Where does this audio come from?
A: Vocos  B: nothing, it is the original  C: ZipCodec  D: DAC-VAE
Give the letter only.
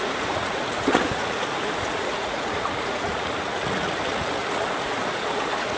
A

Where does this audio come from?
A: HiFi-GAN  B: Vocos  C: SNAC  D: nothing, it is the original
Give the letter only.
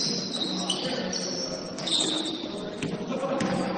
D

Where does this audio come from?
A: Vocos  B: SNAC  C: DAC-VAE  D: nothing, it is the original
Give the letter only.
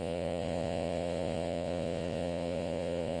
A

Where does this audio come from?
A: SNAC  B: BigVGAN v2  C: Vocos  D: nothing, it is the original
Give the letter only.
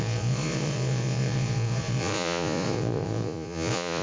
C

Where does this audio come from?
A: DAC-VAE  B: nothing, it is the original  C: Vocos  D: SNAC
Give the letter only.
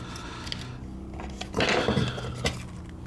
B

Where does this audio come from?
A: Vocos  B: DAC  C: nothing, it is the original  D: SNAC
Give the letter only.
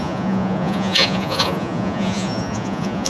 A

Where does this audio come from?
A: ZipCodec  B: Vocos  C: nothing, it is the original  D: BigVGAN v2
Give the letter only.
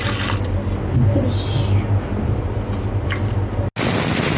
C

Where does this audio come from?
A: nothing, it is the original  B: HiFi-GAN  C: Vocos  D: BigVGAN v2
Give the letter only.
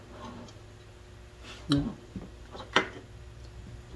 A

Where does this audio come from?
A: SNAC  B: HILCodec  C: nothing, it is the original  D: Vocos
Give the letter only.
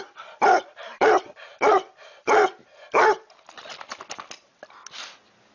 C